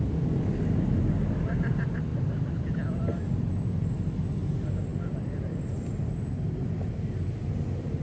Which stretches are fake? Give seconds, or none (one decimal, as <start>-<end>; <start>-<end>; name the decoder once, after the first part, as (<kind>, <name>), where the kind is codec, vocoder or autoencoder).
none